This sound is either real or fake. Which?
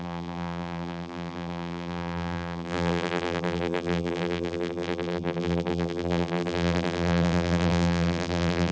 fake